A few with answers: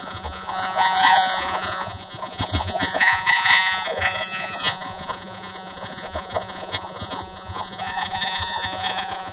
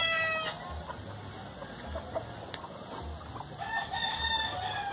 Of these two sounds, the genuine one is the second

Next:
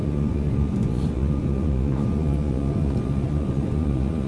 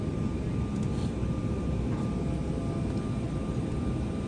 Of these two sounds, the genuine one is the second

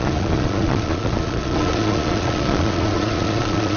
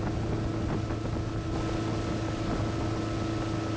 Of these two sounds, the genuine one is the second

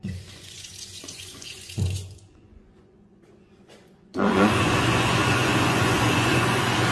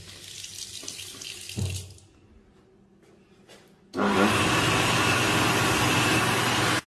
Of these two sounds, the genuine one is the second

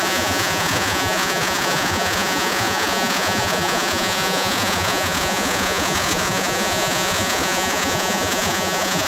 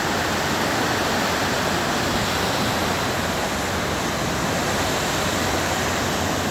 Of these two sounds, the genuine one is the second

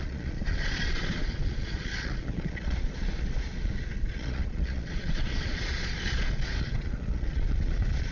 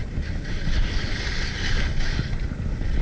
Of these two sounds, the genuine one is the second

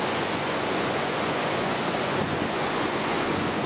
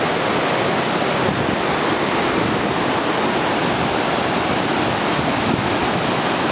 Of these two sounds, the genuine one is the second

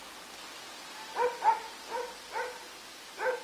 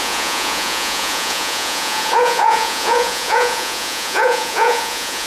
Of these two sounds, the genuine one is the first